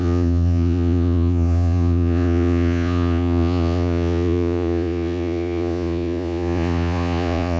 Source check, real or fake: fake